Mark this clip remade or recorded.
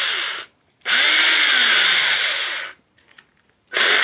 recorded